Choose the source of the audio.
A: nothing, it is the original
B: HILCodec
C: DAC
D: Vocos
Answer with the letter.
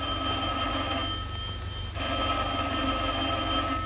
A